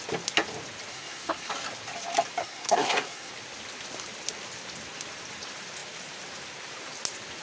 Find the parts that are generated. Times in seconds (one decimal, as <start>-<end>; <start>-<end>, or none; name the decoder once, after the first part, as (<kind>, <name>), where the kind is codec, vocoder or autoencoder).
0.9-1.5 (codec, SNAC); 2.4-3.3